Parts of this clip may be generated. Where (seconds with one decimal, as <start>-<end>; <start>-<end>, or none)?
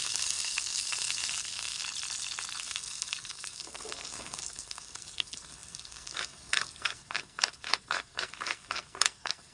0.0-1.8; 2.6-9.5